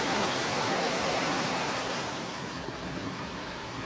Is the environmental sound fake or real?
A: fake